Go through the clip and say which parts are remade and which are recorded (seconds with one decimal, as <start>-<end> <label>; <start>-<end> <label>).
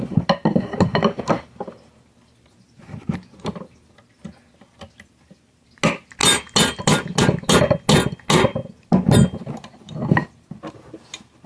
0.0-11.5 recorded